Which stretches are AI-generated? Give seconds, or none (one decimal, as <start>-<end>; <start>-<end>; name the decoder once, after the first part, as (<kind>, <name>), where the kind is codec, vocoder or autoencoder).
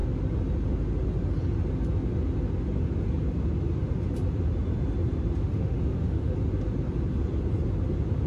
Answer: 5.4-6.3 (autoencoder, DAC-VAE)